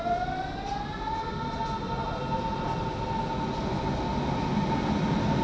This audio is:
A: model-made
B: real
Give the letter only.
B